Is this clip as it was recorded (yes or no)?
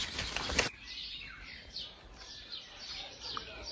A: yes